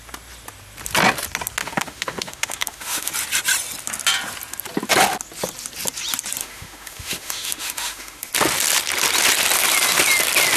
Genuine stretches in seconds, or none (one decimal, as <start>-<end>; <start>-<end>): 0.0-1.6; 3.1-6.4; 8.3-10.6